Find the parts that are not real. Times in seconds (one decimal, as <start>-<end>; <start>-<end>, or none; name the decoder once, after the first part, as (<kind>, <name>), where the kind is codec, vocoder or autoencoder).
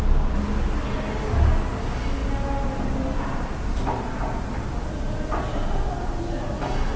none